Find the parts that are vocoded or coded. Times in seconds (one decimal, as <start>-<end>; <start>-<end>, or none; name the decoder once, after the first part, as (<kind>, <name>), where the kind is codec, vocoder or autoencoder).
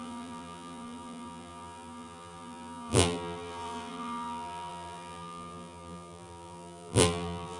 0.0-7.6 (vocoder, BigVGAN v2)